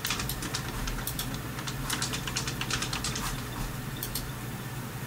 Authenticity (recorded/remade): remade